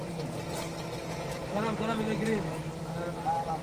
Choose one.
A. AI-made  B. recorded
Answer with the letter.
B